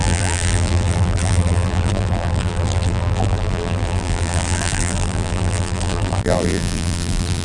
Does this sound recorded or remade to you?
remade